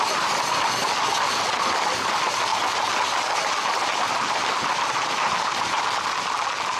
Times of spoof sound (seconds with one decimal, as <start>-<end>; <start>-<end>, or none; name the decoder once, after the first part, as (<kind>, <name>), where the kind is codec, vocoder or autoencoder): none